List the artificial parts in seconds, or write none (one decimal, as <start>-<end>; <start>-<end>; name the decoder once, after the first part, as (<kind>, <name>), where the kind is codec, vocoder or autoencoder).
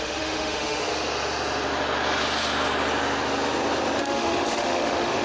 0.0-0.9 (autoencoder, DAC-VAE); 4.0-5.2